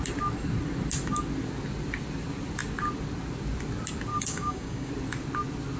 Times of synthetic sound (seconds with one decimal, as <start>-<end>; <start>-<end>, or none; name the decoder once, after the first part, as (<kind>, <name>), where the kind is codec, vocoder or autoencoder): 4.1-4.9 (codec, DAC)